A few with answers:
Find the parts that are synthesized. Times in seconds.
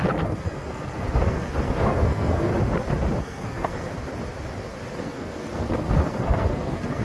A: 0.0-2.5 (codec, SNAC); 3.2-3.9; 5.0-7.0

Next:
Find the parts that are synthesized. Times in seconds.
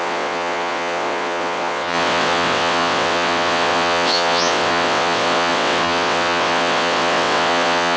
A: 0.0-8.0 (vocoder, WaveNeXt)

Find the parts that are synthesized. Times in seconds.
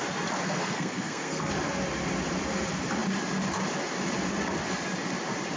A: 0.4-1.5 (codec, SNAC)